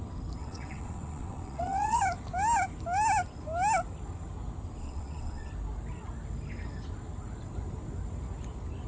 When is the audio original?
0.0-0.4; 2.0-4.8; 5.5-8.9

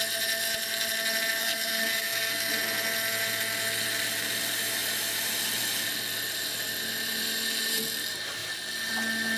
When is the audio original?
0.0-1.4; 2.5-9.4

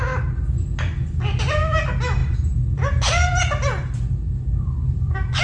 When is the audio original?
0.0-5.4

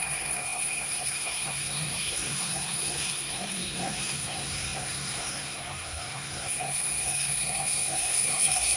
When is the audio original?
none

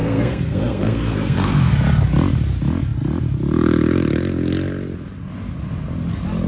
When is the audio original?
1.7-6.5